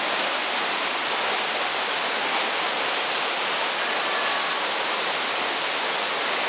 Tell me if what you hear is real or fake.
real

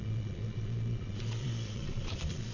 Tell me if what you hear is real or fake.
fake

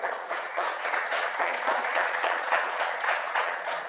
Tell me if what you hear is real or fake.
fake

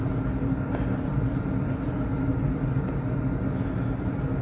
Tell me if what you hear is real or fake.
real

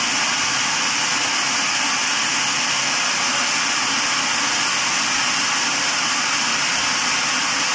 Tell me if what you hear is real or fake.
real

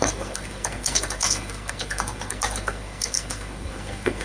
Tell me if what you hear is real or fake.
fake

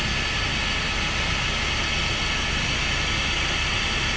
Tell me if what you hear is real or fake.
real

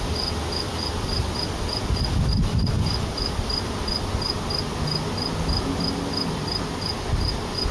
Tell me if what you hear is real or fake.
real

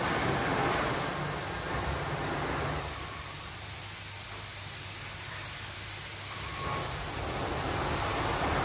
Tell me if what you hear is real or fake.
real